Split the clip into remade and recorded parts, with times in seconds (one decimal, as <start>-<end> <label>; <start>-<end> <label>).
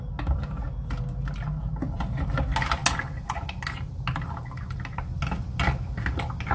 0.0-1.8 recorded; 1.8-2.4 remade; 2.4-6.5 recorded